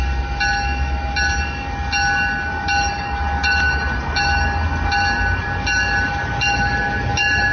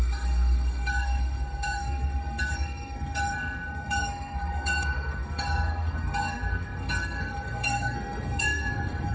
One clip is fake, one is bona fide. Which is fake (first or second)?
second